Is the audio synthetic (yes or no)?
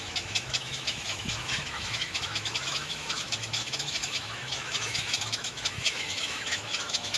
yes